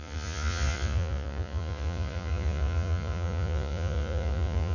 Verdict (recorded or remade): remade